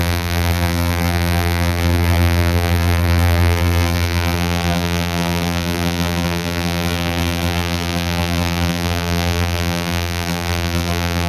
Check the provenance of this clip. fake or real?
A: fake